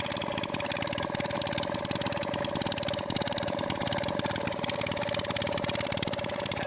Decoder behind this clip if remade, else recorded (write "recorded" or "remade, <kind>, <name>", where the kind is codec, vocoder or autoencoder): recorded